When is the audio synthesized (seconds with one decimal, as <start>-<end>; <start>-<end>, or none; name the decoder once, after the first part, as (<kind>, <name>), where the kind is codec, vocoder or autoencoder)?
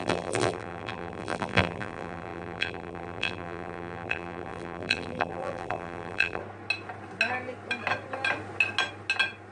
0.0-6.4 (vocoder, BigVGAN v2)